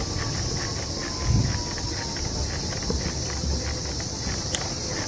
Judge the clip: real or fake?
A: real